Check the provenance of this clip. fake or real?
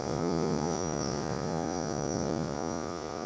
fake